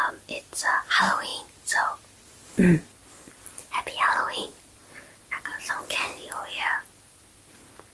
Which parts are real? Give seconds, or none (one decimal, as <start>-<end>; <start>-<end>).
0.0-7.9